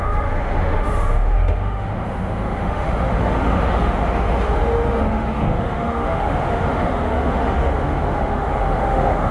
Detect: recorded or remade remade